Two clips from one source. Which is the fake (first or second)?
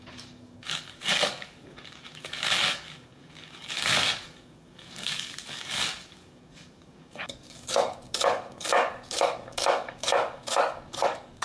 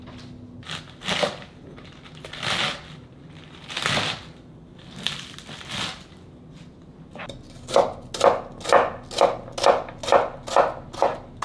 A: first